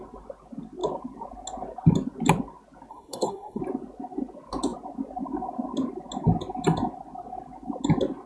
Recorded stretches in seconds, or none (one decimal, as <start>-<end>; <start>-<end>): 0.0-2.9; 3.6-8.3